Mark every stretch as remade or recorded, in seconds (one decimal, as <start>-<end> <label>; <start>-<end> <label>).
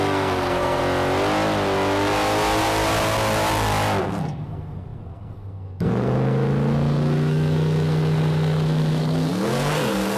0.0-0.8 remade; 0.8-4.0 recorded; 4.0-10.2 remade